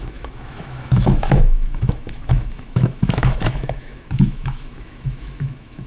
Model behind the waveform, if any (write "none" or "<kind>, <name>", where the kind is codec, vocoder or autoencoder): autoencoder, DAC-VAE